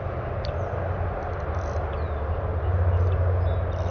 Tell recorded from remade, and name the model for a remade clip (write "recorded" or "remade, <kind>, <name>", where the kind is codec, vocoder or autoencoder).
recorded